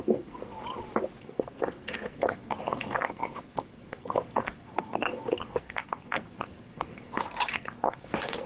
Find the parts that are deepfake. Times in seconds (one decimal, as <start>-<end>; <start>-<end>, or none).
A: 0.0-0.5; 1.2-8.5